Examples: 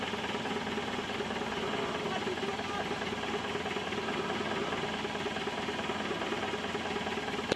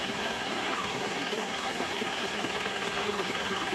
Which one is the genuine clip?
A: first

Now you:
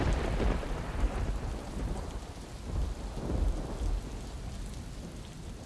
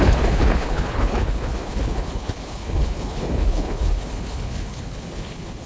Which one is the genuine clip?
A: first